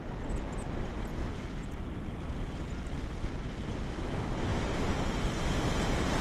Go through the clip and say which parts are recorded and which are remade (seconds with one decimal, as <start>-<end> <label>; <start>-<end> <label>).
0.0-4.5 recorded; 4.5-5.0 remade; 5.0-6.2 recorded